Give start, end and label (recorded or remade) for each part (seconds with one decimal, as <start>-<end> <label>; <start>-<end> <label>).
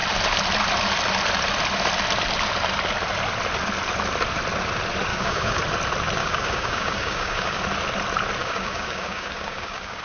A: 0.0-5.1 recorded; 5.1-5.6 remade; 5.6-6.2 recorded; 6.2-7.6 remade; 7.6-8.4 recorded; 8.4-10.0 remade